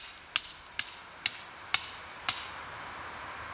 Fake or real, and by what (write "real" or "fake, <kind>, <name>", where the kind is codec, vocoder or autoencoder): real